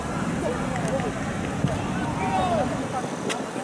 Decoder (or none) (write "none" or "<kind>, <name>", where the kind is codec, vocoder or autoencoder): none